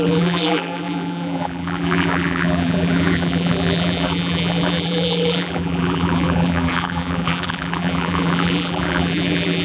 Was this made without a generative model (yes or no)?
no